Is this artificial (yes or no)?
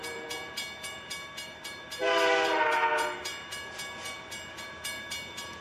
yes